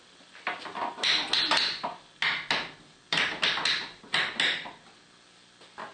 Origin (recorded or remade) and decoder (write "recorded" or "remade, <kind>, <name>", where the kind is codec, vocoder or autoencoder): recorded